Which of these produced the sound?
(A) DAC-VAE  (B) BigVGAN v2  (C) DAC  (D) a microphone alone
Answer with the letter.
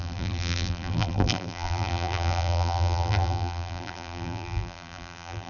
B